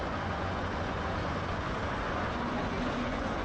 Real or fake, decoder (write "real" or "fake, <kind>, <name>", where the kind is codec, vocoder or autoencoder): fake, vocoder, Vocos